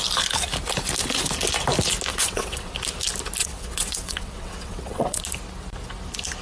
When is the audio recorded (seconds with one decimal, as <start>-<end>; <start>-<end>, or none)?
0.0-2.1; 2.7-3.4; 5.2-6.4